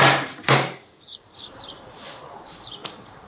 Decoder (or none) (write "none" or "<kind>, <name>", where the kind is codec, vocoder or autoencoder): vocoder, BigVGAN v2